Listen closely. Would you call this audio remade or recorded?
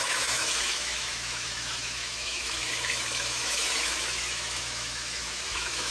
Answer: remade